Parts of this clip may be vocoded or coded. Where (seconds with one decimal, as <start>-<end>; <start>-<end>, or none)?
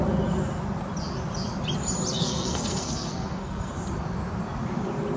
2.2-3.8